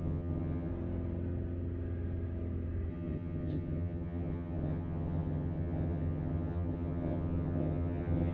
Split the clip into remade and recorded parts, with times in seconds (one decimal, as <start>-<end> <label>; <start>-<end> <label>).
0.0-0.7 remade; 0.7-2.9 recorded; 2.9-8.3 remade